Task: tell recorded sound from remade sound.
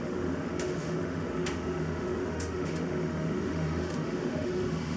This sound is remade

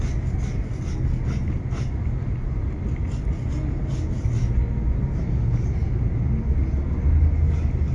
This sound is recorded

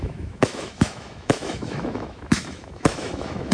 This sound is remade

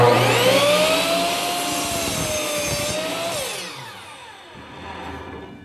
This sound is recorded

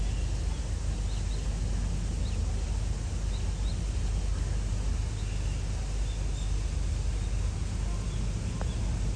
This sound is recorded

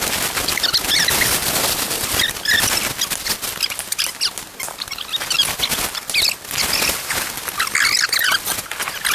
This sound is recorded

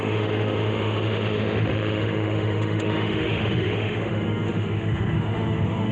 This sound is remade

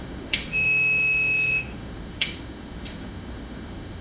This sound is remade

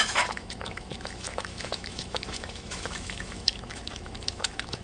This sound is remade